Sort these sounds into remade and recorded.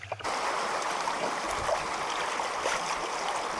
recorded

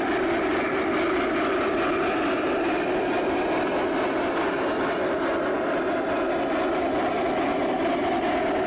recorded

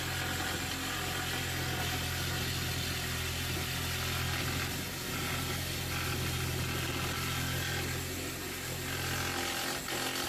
recorded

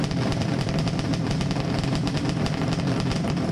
remade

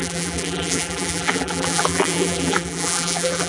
remade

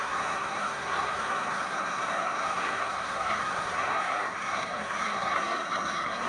remade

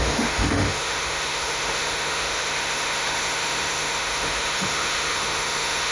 remade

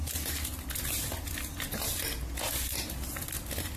recorded